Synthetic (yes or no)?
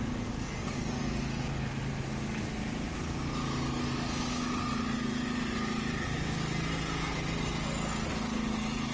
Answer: no